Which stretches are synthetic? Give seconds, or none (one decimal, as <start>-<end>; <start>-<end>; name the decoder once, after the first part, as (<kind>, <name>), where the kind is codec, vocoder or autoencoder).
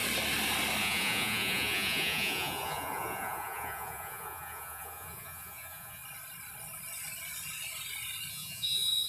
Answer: 0.8-6.0 (vocoder, Vocos); 8.3-9.1